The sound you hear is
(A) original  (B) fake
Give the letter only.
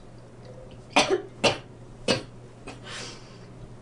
A